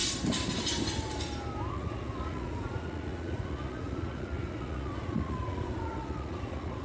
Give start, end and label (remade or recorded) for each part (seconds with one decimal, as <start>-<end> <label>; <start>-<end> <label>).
0.0-1.7 recorded; 1.7-6.8 remade